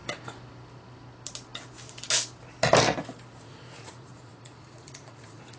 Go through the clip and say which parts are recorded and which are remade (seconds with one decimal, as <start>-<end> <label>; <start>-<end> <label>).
0.0-3.4 recorded; 3.4-5.6 remade